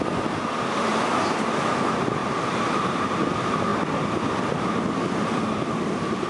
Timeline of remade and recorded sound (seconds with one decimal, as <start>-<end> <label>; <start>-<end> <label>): 0.0-2.2 recorded; 2.2-2.9 remade; 2.9-6.3 recorded